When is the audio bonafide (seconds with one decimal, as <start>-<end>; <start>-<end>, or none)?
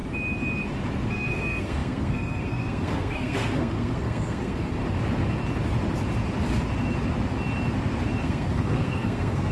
0.0-1.1; 4.8-8.2